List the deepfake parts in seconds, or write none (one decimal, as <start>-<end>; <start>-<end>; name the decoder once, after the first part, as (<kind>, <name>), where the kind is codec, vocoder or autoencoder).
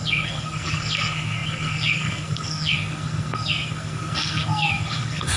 0.0-5.4 (codec, SNAC)